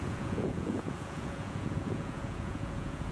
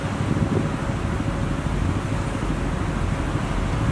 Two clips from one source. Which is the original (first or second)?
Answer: second